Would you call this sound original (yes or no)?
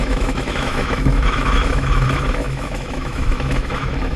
no